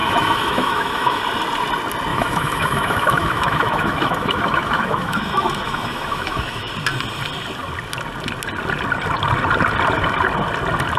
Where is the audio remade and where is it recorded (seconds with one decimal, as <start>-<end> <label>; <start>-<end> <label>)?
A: 0.0-1.2 remade; 1.2-2.1 recorded; 2.1-6.7 remade; 6.7-11.0 recorded